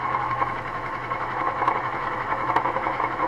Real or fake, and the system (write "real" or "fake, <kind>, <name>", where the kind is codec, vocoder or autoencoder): fake, autoencoder, DAC-VAE